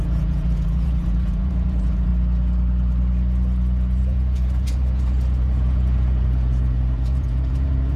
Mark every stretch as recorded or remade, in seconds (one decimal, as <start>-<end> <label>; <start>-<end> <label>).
0.0-2.1 remade; 2.1-4.0 recorded; 4.0-8.0 remade